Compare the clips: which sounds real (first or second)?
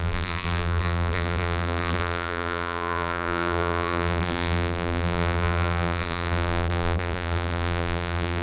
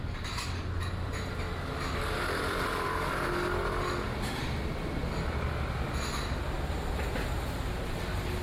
second